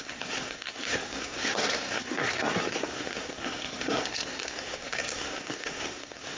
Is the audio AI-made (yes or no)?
yes